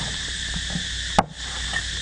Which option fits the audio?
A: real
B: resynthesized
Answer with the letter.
A